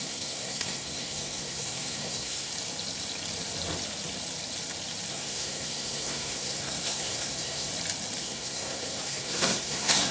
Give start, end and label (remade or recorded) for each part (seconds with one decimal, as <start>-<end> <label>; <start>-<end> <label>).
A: 0.0-2.5 remade; 2.5-5.1 recorded; 5.1-7.7 remade; 7.7-8.2 recorded; 8.2-10.1 remade